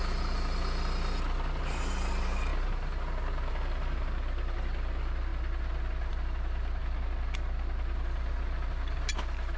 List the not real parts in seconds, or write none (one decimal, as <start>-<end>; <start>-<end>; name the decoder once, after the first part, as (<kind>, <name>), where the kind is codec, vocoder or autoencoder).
none